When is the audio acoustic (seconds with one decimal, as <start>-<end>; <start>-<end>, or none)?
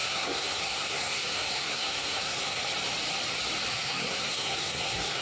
2.6-3.7